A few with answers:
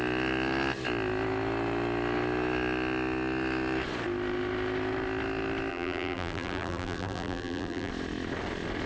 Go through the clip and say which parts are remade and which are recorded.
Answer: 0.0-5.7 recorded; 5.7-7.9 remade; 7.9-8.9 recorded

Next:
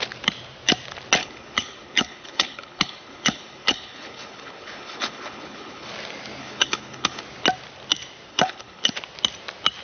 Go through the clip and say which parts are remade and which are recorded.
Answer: 0.0-1.2 recorded; 1.2-5.9 remade; 5.9-6.4 recorded; 6.4-7.2 remade; 7.2-8.3 recorded; 8.3-8.9 remade; 8.9-9.8 recorded

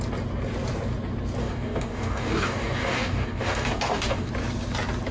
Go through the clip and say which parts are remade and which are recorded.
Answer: 0.0-1.4 recorded; 1.4-4.3 remade; 4.3-5.1 recorded

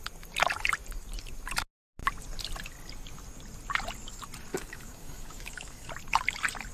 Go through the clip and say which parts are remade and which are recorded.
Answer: 0.0-4.5 recorded; 4.5-5.9 remade; 5.9-6.7 recorded

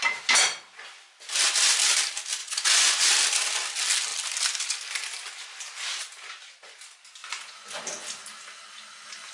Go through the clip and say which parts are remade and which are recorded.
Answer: 0.0-2.4 recorded; 2.4-3.1 remade; 3.1-7.2 recorded; 7.2-7.8 remade; 7.8-9.3 recorded

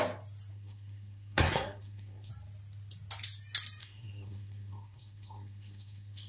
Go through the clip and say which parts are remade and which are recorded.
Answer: 0.0-0.5 recorded; 0.5-2.3 remade; 2.3-3.8 recorded; 3.8-6.3 remade

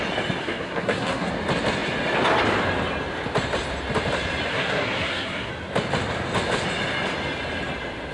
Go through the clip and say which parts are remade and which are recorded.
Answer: 0.0-0.4 recorded; 0.4-1.3 remade; 1.3-4.5 recorded; 4.5-5.5 remade; 5.5-8.1 recorded

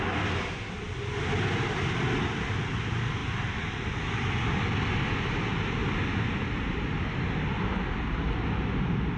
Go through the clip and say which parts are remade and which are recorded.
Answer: 0.0-9.2 recorded